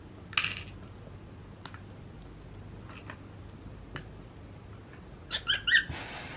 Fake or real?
real